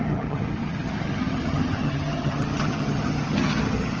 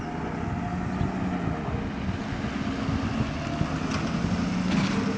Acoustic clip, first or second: second